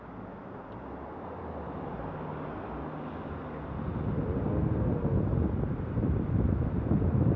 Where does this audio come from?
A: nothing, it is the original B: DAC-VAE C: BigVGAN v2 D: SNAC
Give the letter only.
A